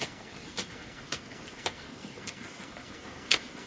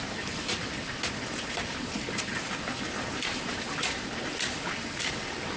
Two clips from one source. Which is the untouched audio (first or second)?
second